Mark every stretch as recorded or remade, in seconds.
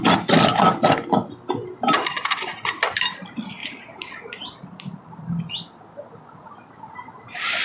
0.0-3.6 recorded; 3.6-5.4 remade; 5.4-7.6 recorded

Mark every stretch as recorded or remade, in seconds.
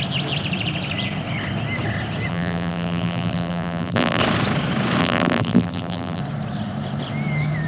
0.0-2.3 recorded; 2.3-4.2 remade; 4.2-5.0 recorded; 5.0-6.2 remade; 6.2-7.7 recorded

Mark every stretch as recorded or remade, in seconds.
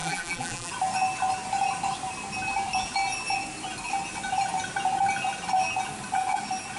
0.0-0.7 remade; 0.7-6.8 recorded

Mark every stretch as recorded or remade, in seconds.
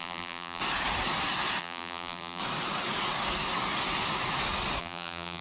0.0-0.6 remade; 0.6-1.6 recorded; 1.6-2.4 remade; 2.4-4.8 recorded; 4.8-5.4 remade